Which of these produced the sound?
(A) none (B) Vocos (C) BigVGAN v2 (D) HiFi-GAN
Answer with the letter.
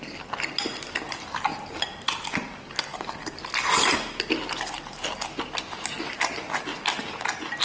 A